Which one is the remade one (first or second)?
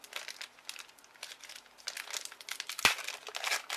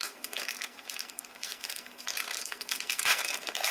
second